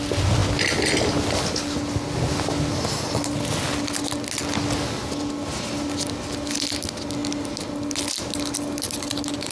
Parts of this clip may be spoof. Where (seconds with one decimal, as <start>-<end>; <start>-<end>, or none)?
none